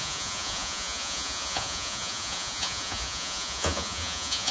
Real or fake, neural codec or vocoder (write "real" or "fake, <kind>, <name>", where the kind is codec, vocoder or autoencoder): fake, vocoder, Vocos